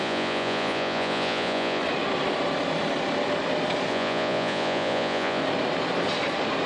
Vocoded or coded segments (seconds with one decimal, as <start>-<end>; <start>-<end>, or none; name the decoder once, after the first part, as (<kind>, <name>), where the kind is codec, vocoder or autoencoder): 0.0-1.8 (vocoder, Vocos); 3.9-5.4